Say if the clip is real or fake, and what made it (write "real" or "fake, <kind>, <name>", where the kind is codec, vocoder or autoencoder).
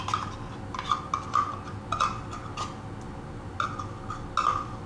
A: real